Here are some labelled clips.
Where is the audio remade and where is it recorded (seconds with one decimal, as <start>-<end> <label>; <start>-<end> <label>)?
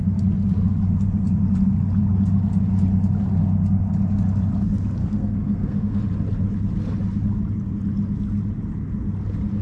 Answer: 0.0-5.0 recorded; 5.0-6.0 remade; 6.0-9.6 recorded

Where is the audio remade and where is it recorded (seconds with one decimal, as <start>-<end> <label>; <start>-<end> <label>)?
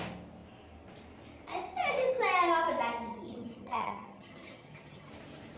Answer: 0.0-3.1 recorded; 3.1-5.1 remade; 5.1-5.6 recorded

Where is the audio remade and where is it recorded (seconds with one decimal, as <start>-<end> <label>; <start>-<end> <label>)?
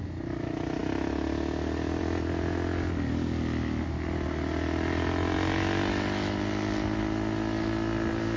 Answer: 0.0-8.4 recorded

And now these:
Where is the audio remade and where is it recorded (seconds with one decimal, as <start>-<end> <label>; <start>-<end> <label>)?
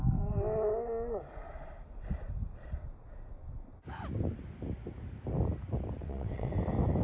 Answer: 0.0-6.0 recorded; 6.0-6.5 remade; 6.5-7.0 recorded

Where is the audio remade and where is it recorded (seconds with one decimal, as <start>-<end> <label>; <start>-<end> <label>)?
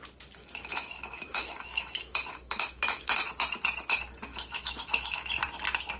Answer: 0.0-0.4 recorded; 0.4-3.3 remade; 3.3-4.3 recorded; 4.3-5.3 remade; 5.3-6.0 recorded